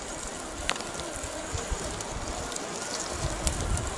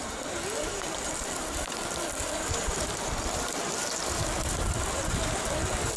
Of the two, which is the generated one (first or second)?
second